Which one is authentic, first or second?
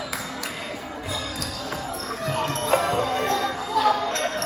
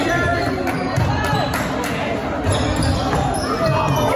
second